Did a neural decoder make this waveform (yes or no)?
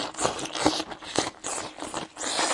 no